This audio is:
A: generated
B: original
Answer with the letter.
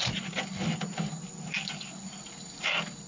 B